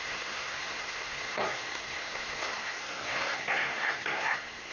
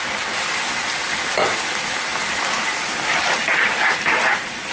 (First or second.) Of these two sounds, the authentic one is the second